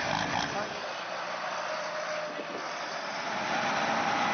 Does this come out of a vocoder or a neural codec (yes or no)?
no